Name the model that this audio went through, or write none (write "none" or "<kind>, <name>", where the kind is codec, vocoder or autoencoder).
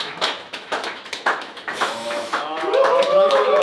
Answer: autoencoder, DAC-VAE